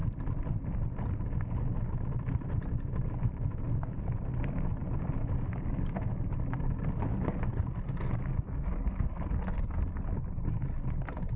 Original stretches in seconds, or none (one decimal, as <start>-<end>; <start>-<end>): 0.0-11.4